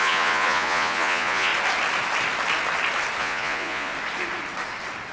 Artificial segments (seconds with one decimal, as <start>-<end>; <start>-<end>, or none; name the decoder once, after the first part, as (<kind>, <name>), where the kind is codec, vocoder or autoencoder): 0.0-1.5 (vocoder, Vocos); 3.2-3.9